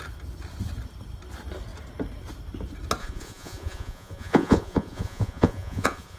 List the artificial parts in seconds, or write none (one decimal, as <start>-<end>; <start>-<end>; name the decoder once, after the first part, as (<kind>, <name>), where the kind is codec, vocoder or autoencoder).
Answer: 3.0-6.2 (vocoder, Vocos)